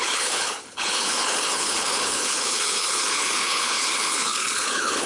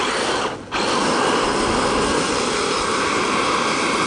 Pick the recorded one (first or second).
second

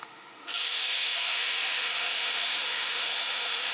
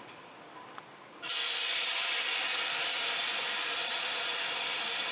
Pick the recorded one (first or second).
second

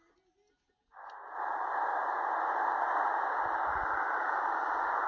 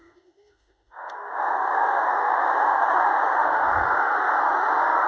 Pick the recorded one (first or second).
first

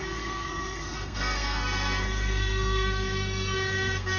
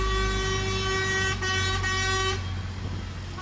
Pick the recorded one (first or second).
second